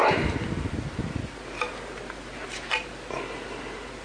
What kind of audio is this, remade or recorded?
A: recorded